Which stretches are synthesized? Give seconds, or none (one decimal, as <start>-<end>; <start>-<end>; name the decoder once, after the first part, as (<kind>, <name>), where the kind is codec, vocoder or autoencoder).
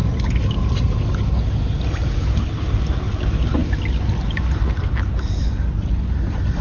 none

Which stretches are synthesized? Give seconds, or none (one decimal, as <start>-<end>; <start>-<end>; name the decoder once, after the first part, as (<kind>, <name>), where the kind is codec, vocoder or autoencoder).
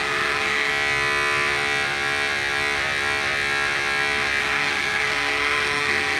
0.0-0.7 (codec, SNAC); 4.4-6.2